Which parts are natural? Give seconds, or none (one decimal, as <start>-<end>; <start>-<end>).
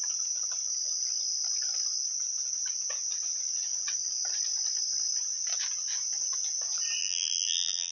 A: 0.0-7.0